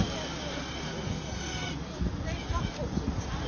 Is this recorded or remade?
recorded